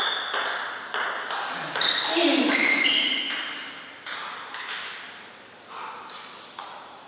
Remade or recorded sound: remade